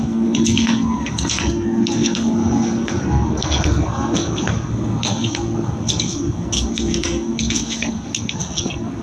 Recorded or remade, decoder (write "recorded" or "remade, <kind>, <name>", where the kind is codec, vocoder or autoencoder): remade, codec, SNAC